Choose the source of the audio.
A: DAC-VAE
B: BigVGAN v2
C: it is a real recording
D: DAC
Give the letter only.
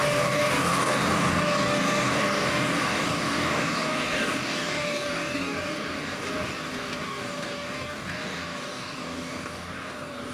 D